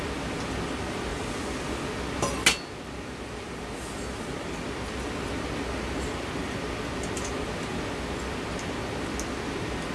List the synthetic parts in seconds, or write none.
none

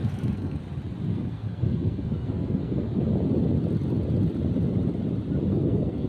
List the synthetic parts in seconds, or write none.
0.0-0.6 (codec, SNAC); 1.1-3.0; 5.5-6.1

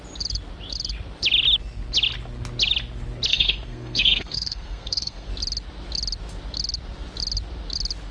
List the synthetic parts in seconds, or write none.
3.3-5.3 (codec, SNAC)

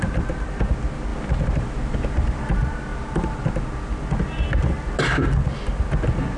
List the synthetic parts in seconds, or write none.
none

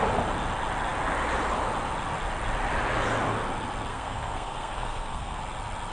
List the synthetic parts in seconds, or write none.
3.9-5.4 (codec, SNAC)